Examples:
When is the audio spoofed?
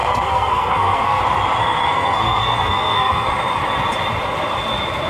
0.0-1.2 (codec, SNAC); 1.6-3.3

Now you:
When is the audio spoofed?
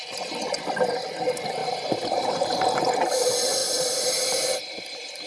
1.6-2.8 (vocoder, BigVGAN v2); 3.6-5.3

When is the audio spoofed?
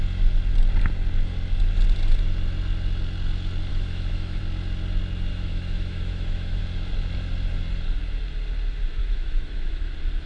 3.7-4.4 (autoencoder, DAC-VAE); 5.3-6.6; 9.0-9.9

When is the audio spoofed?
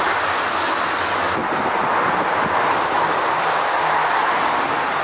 none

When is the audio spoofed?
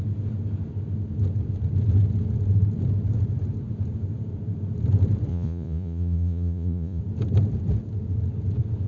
5.3-7.0 (vocoder, Vocos)